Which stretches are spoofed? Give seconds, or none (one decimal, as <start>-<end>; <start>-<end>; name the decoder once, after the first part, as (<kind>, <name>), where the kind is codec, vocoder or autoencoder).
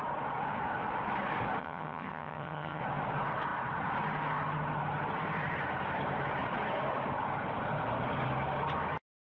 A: 1.6-2.8 (vocoder, HiFi-GAN)